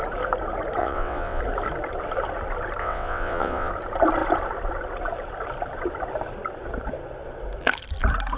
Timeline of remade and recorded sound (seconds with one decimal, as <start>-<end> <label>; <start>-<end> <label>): 0.0-0.8 recorded; 0.8-1.4 remade; 1.4-2.8 recorded; 2.8-3.7 remade; 3.7-8.4 recorded